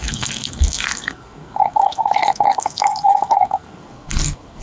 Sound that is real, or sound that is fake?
fake